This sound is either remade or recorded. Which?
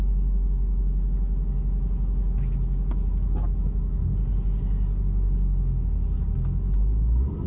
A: recorded